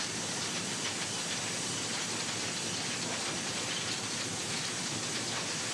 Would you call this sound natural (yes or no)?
yes